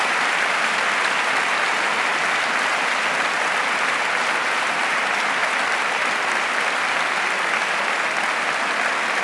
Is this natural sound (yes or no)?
yes